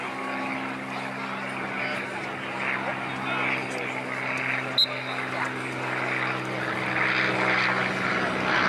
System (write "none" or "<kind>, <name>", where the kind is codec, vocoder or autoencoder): none